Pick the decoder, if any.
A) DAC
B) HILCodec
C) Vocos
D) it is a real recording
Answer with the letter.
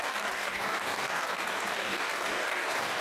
A